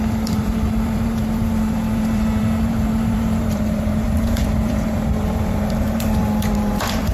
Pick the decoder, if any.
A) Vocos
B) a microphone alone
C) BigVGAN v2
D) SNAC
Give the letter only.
C